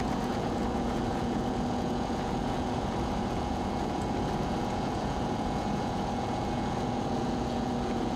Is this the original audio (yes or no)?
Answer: no